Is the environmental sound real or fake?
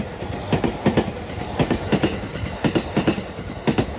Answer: real